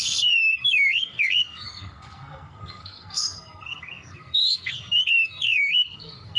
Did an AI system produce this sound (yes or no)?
yes